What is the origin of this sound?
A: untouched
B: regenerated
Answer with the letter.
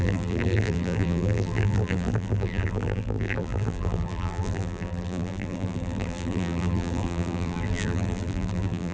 B